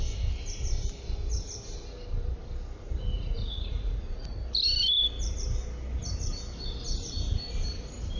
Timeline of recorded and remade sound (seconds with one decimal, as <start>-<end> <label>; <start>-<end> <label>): 0.0-3.1 recorded; 3.1-4.3 remade; 4.3-8.2 recorded